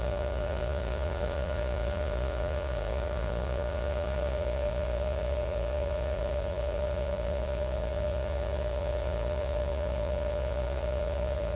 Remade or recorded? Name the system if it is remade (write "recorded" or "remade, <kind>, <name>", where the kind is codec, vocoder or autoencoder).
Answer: remade, vocoder, Vocos